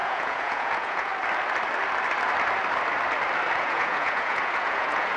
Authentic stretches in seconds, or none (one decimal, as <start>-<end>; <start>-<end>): 1.1-3.6

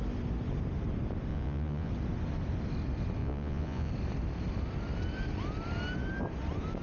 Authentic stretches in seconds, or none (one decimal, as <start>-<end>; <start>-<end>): 0.0-1.3; 1.9-3.2; 3.9-6.8

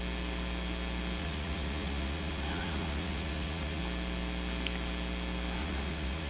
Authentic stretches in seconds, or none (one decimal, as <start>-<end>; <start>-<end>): 0.0-1.2; 3.8-5.6